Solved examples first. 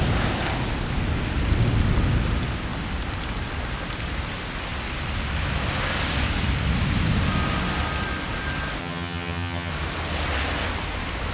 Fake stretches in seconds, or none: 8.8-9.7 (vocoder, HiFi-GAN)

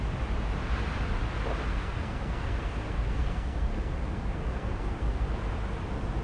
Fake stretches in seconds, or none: 1.7-5.4 (codec, SNAC)